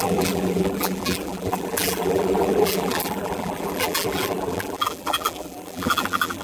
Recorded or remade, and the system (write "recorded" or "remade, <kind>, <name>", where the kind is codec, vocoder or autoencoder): remade, vocoder, BigVGAN v2